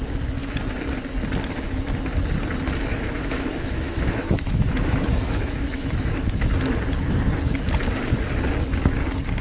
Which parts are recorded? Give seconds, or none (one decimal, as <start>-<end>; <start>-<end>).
0.0-2.9; 6.5-9.4